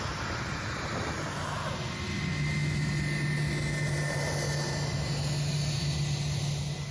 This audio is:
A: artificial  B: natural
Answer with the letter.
B